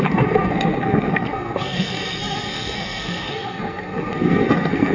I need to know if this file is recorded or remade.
remade